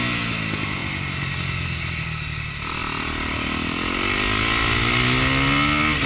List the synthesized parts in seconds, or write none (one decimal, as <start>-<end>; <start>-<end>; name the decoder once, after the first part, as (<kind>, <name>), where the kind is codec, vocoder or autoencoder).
none